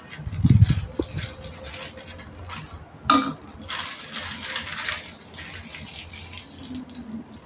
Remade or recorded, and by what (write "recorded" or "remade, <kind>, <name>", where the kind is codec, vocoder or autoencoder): recorded